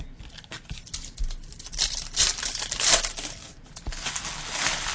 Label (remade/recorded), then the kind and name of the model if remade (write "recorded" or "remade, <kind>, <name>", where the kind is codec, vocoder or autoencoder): recorded